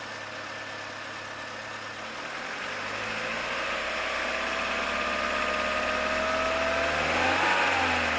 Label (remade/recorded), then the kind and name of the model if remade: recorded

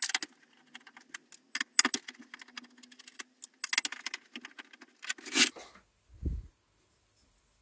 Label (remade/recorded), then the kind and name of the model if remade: recorded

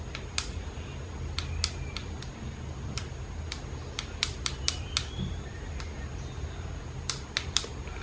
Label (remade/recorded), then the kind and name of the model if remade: recorded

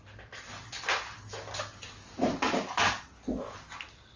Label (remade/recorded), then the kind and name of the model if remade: recorded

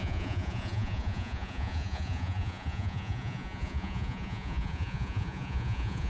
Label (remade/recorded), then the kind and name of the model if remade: remade, vocoder, Vocos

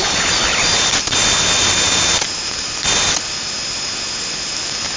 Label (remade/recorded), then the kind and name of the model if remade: recorded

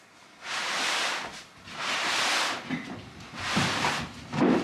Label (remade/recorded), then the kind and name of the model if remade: recorded